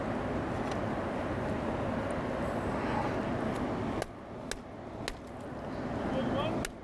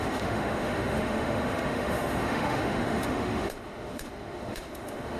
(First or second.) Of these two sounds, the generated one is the second